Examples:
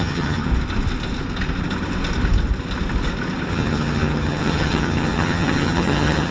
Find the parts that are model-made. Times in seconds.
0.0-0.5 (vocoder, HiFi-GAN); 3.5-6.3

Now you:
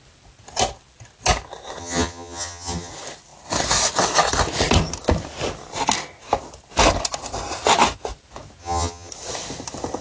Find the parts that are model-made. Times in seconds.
1.8-2.9 (vocoder, HiFi-GAN); 8.6-9.1

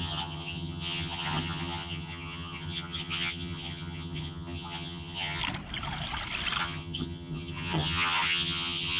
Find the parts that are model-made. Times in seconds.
0.0-5.4 (vocoder, HiFi-GAN); 6.6-9.0

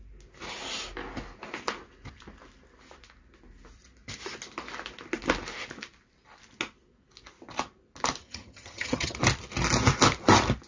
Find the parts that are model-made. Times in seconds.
8.2-9.2 (vocoder, HiFi-GAN)

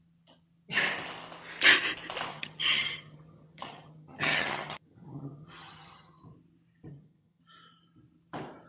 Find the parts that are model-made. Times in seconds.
2.3-6.2 (vocoder, HiFi-GAN); 6.9-7.4

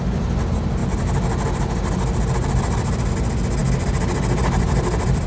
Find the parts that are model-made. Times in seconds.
none

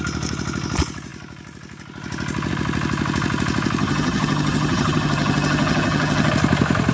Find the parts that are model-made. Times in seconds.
3.8-6.3 (vocoder, HiFi-GAN)

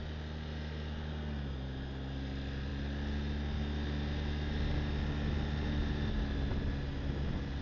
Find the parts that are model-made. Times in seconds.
none